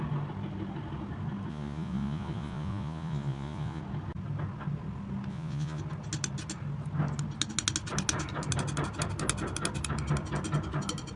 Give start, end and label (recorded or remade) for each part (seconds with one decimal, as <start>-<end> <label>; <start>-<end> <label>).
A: 0.0-1.5 recorded; 1.5-3.8 remade; 3.8-5.3 recorded; 5.3-5.8 remade; 5.8-11.2 recorded